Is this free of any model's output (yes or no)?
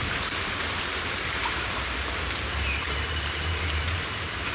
no